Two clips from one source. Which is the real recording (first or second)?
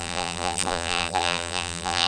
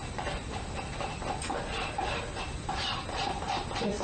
second